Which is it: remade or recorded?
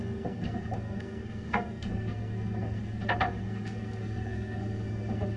remade